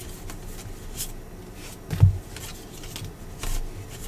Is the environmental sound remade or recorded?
recorded